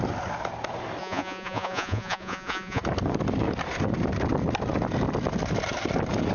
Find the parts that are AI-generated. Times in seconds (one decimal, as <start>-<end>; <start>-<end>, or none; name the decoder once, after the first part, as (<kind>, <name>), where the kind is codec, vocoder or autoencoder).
1.0-2.8 (vocoder, Vocos)